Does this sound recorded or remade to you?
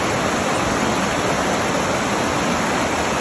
recorded